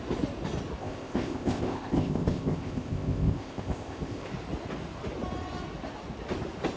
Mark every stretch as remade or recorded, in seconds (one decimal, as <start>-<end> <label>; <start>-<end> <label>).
0.0-0.8 recorded; 0.8-4.3 remade; 4.3-6.8 recorded